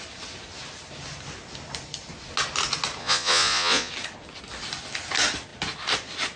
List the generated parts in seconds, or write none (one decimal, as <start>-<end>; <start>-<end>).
3.0-3.9